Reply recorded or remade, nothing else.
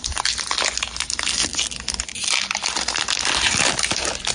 recorded